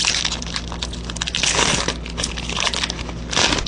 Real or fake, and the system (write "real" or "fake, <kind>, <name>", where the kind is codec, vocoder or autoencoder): real